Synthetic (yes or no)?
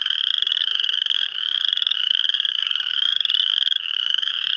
yes